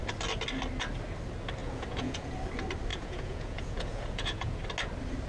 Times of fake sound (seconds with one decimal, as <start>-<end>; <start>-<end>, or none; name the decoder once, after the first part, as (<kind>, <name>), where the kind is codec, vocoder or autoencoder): 1.6-2.3 (vocoder, Vocos); 2.9-4.6